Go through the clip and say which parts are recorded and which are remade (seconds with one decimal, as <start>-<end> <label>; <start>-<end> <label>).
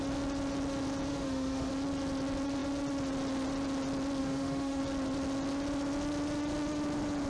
0.0-1.1 recorded; 1.1-1.7 remade; 1.7-4.2 recorded; 4.2-4.8 remade; 4.8-7.3 recorded